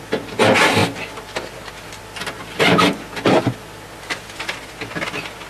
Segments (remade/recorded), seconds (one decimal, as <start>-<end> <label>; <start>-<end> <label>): 0.0-5.5 recorded